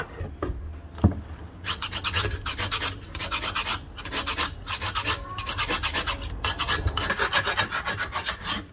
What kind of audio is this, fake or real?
real